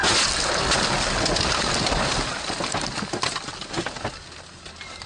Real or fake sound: real